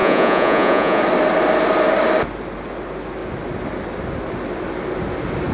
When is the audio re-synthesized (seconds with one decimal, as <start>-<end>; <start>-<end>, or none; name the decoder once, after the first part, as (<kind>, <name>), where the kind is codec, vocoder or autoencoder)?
0.0-1.0 (vocoder, Vocos)